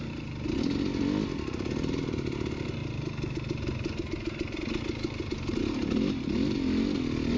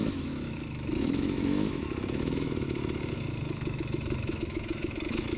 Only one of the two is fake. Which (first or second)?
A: second